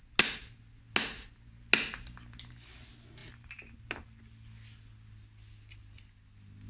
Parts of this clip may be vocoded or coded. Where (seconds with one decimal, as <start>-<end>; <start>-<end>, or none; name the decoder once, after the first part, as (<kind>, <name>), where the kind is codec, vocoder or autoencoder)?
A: none